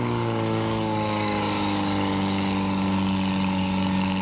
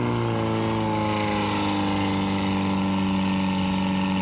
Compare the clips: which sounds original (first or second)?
second